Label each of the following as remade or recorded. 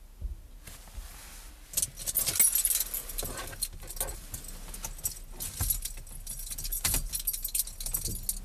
recorded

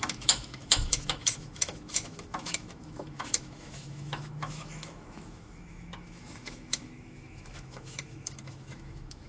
remade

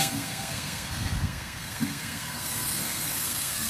remade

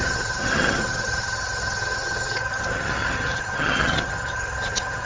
remade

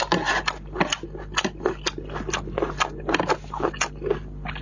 recorded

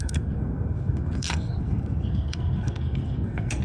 remade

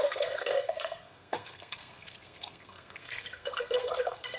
remade